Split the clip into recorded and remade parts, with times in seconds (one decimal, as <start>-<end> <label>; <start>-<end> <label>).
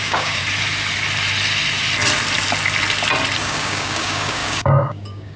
0.0-0.4 remade; 0.4-3.4 recorded; 3.4-5.4 remade